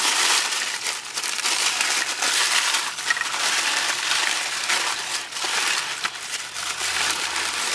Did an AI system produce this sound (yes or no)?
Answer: yes